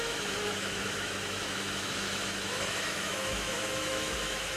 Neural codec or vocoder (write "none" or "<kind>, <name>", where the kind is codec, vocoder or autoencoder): autoencoder, DAC-VAE